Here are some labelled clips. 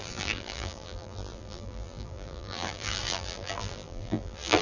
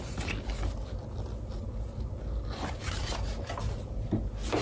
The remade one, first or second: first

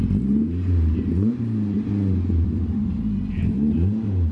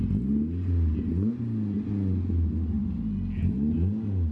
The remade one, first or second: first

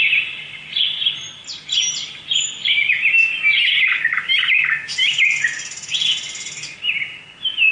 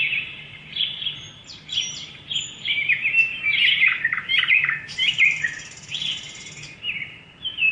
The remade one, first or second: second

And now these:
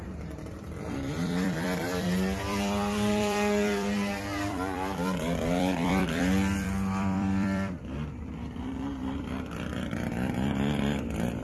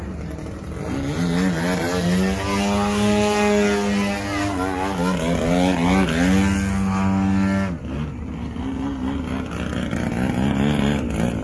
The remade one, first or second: first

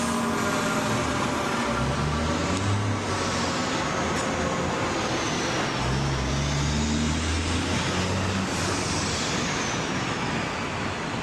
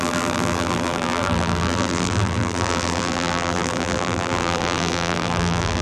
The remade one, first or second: second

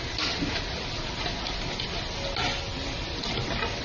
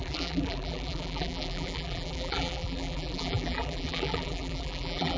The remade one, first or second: second